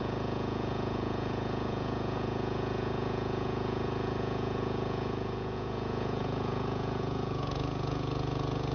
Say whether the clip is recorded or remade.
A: remade